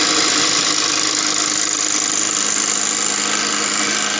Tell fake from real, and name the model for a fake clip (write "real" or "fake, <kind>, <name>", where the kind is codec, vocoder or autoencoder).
real